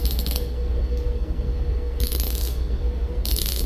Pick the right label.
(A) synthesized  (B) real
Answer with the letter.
A